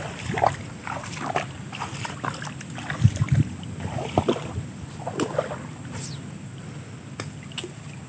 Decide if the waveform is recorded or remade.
recorded